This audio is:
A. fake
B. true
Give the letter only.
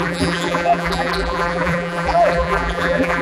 A